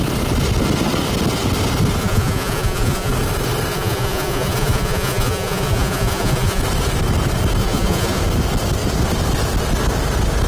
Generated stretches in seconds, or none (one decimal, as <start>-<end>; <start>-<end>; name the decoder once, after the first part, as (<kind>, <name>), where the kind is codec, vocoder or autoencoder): 2.0-3.1 (vocoder, Vocos); 3.7-6.6; 7.6-8.2